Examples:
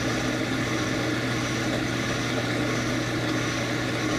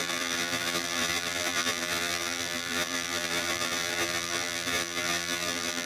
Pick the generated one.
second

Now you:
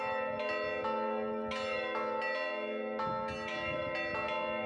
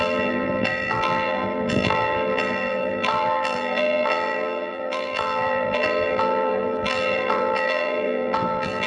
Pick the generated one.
second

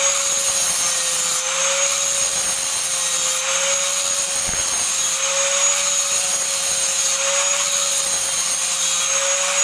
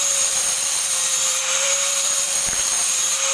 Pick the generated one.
second